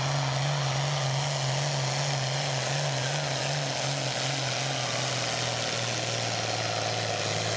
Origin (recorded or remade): recorded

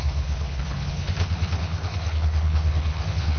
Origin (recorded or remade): remade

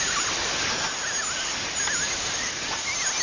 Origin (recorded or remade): recorded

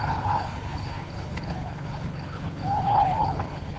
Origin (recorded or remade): remade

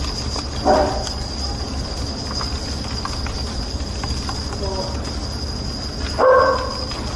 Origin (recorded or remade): recorded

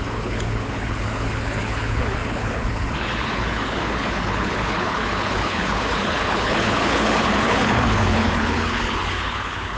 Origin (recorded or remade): remade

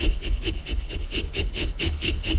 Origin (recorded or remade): remade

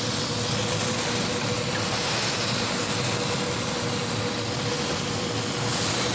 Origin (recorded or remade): recorded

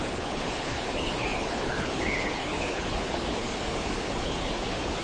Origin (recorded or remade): remade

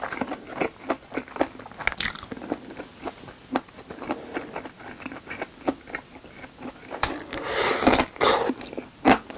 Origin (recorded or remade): recorded